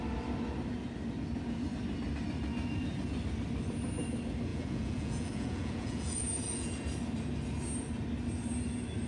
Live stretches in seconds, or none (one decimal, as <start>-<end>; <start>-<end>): 0.0-4.5; 6.7-9.1